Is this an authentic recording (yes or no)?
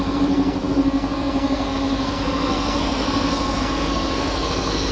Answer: no